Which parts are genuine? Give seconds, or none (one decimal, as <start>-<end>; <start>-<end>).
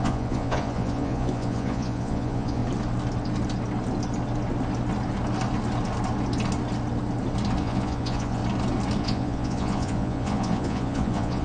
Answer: 2.6-7.6; 8.4-9.0